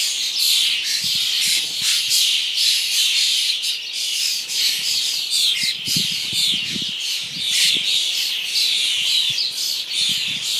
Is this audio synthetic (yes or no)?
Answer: no